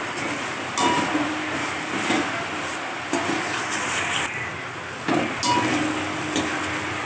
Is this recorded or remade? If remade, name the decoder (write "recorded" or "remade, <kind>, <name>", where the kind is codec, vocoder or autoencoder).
recorded